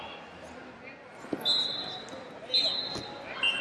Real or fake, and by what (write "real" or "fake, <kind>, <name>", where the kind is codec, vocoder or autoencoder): real